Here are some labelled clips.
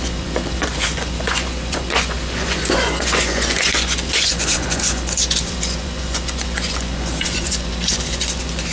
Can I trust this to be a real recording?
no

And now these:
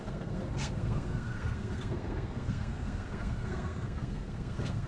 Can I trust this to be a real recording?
no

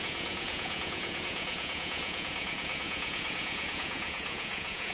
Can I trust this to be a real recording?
no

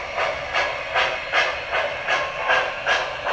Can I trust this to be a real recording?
yes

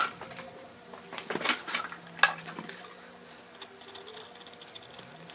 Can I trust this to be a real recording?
yes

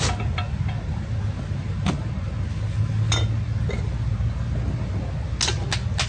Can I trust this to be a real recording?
yes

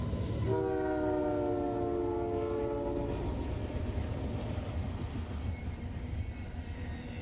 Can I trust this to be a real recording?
yes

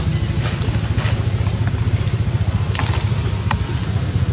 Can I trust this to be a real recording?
yes